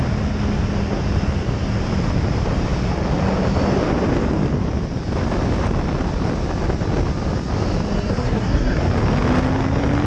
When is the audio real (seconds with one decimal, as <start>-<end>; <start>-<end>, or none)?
0.0-8.1; 8.8-10.1